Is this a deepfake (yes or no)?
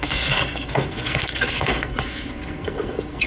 yes